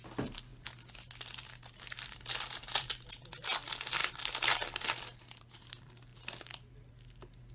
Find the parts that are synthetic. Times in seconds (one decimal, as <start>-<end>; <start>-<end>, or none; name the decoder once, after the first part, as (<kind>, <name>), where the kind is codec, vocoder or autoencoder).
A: none